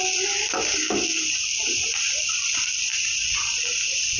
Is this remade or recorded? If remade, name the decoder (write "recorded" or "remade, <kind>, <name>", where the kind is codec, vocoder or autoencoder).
recorded